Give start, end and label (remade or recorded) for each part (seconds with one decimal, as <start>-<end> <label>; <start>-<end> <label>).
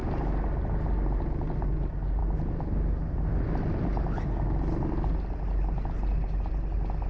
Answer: 0.0-7.1 recorded